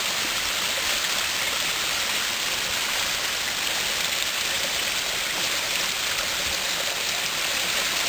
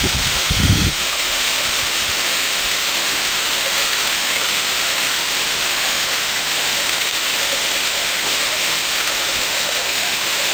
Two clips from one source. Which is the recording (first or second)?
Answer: first